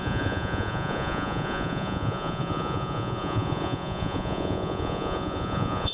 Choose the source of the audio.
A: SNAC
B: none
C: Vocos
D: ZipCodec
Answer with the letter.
C